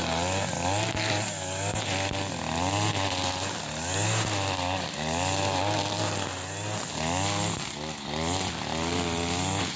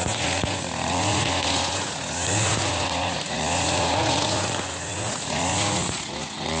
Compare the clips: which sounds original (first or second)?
first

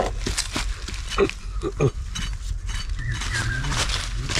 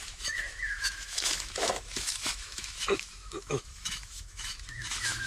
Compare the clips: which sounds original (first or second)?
first